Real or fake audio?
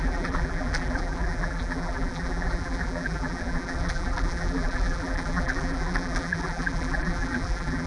fake